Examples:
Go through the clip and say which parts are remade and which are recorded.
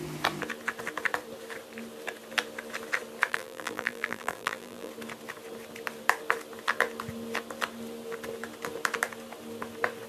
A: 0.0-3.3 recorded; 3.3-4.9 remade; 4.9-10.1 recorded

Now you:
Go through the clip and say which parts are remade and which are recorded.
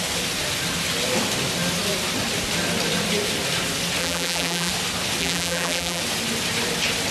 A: 0.0-4.0 recorded; 4.0-4.7 remade; 4.7-5.2 recorded; 5.2-6.0 remade; 6.0-7.1 recorded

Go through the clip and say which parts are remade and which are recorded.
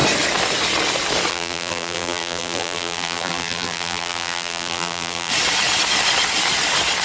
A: 0.0-1.3 recorded; 1.3-5.3 remade; 5.3-7.0 recorded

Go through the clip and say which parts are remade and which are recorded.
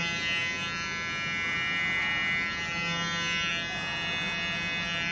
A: 0.0-5.1 recorded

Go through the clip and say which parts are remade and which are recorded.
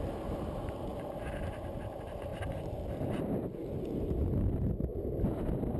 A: 0.0-0.9 recorded; 0.9-1.7 remade; 1.7-2.3 recorded; 2.3-3.2 remade; 3.2-4.9 recorded; 4.9-5.8 remade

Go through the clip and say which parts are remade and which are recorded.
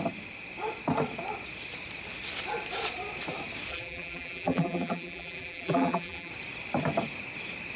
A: 0.0-3.7 recorded; 3.7-6.3 remade; 6.3-7.8 recorded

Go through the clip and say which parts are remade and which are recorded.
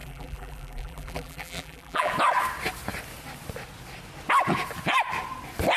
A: 0.0-2.1 remade; 2.1-5.8 recorded